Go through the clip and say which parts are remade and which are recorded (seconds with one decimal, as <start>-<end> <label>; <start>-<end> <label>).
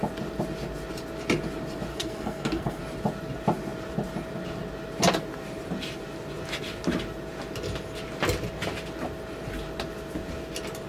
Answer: 0.0-1.9 recorded; 1.9-2.8 remade; 2.8-10.9 recorded